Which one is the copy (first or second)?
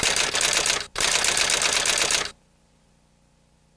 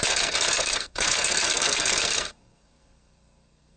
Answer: second